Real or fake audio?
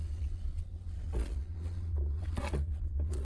fake